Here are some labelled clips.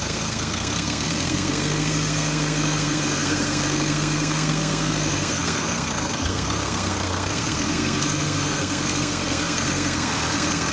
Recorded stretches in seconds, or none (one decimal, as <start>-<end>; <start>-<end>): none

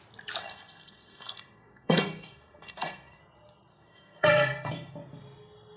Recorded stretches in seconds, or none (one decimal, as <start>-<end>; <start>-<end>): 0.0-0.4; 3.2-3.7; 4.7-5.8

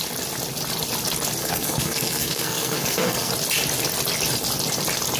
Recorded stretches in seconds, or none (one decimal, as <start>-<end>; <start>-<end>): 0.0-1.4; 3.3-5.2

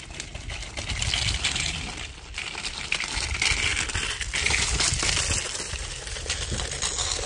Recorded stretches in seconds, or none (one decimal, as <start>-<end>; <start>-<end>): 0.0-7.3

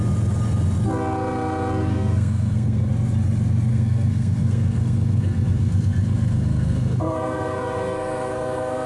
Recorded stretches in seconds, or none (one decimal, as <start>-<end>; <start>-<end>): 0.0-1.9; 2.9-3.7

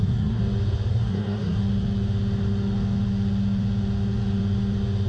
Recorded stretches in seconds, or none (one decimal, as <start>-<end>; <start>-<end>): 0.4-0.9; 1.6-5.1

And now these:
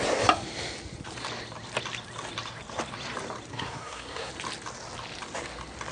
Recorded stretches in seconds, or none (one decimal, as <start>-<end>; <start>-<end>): 0.0-3.5; 4.3-5.9